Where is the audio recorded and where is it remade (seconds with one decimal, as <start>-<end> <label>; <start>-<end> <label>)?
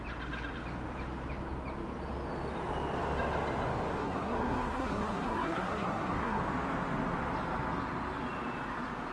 0.0-4.0 recorded; 4.0-6.4 remade; 6.4-9.1 recorded